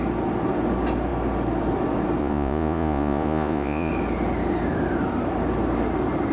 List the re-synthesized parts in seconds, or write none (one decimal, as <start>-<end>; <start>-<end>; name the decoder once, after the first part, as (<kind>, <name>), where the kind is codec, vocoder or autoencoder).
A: 2.2-3.9 (vocoder, Vocos)